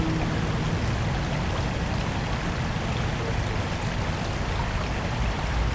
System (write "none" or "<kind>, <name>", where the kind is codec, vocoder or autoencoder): none